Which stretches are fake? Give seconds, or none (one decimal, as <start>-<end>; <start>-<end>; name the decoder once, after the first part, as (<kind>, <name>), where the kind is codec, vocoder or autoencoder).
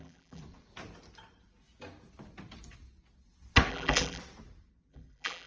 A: 0.0-0.4 (vocoder, BigVGAN v2); 3.7-4.2; 4.9-5.5